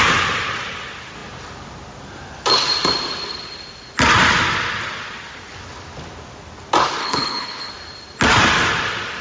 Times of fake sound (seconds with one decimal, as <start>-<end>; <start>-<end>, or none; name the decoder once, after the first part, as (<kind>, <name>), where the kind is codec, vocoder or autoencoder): 7.0-7.7 (codec, HILCodec)